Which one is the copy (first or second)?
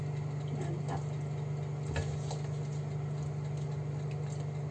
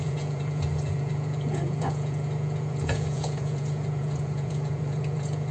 second